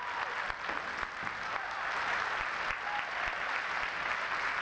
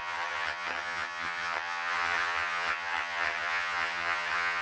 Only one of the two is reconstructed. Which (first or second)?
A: second